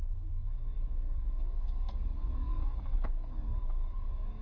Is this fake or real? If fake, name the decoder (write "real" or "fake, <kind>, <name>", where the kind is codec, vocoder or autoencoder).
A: fake, codec, DAC